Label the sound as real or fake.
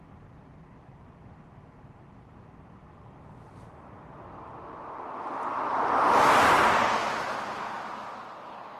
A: fake